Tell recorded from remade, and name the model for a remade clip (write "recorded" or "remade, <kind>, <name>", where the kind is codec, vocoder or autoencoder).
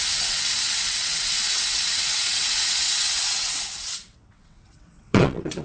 remade, vocoder, WaveNeXt